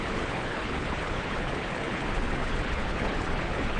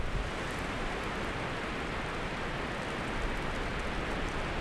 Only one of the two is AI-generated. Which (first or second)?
first